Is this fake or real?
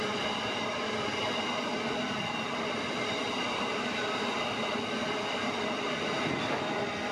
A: real